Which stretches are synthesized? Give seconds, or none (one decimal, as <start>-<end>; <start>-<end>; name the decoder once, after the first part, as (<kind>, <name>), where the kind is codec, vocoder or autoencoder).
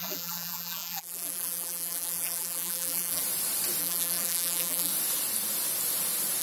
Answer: 0.0-3.2 (vocoder, BigVGAN v2); 3.8-4.9